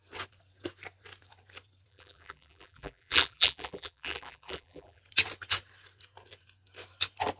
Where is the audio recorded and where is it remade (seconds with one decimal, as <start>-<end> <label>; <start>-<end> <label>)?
0.0-1.9 recorded; 1.9-5.0 remade; 5.0-7.4 recorded